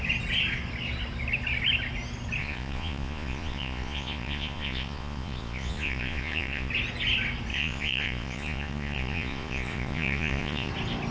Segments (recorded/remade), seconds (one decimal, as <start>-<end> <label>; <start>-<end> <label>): 0.0-2.4 recorded; 2.4-6.7 remade; 6.7-7.5 recorded; 7.5-10.7 remade; 10.7-11.1 recorded